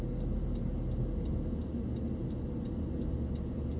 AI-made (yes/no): no